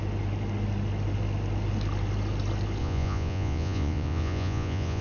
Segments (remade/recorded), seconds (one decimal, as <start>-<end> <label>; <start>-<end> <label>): 0.0-2.8 recorded; 2.8-5.0 remade